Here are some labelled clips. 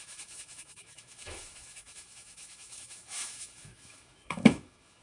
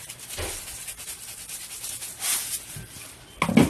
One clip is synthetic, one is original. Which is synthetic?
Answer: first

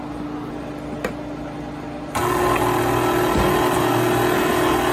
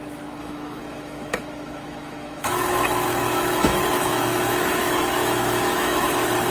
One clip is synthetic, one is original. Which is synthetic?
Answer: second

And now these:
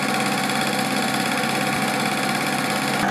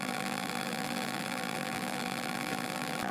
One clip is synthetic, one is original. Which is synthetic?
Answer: second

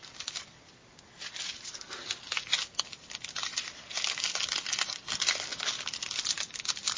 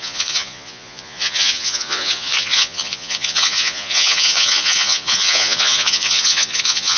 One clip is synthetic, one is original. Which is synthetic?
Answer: second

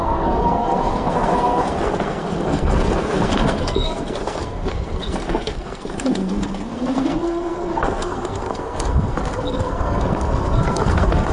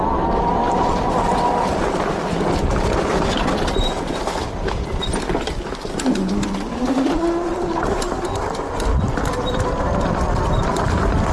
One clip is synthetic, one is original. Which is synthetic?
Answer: first